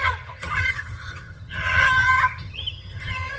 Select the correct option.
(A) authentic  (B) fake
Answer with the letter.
B